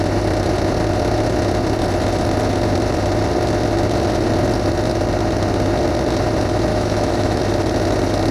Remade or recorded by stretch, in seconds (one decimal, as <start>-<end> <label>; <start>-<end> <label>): 0.0-6.7 recorded; 6.7-7.4 remade; 7.4-8.3 recorded

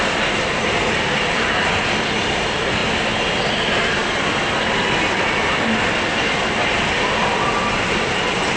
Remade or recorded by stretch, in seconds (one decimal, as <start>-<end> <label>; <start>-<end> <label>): 0.0-8.6 recorded

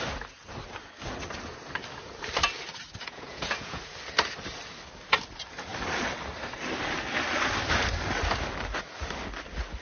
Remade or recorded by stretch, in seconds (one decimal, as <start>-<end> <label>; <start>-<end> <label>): 0.0-3.0 recorded; 3.0-3.8 remade; 3.8-9.8 recorded

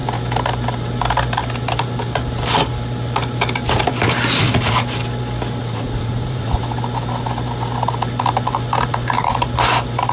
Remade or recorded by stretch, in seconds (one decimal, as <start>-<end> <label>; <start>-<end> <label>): 0.0-5.6 recorded; 5.6-6.6 remade; 6.6-10.1 recorded

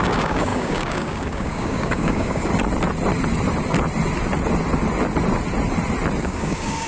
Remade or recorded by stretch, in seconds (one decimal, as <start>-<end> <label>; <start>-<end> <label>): 0.0-2.5 remade; 2.5-6.2 recorded; 6.2-6.9 remade